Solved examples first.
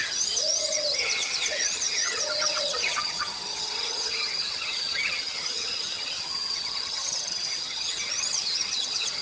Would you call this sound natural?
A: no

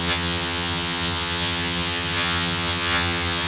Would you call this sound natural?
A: no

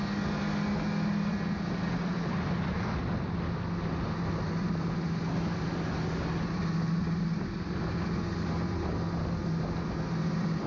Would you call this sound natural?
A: yes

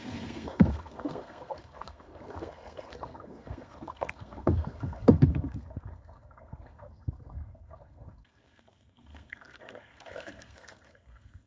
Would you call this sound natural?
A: no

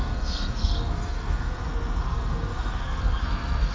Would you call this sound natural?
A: no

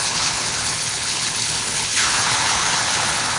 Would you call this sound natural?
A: no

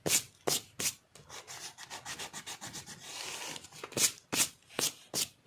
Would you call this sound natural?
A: yes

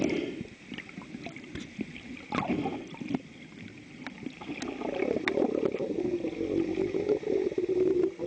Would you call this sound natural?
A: yes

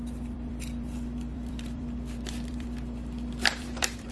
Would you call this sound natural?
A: no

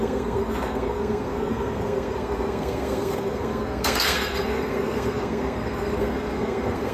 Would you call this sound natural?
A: no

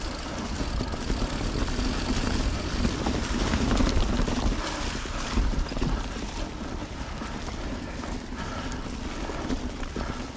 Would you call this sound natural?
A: yes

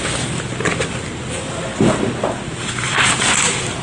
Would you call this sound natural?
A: yes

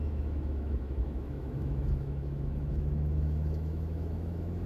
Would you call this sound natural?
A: no